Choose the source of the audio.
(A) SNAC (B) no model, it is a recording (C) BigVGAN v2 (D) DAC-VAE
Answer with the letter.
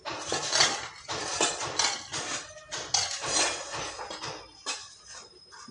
B